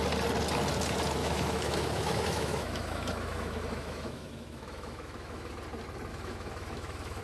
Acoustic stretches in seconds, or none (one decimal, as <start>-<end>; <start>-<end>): 0.0-1.2; 5.5-6.1